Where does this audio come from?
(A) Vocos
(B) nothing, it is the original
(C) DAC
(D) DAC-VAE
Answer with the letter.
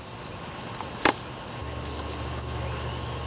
B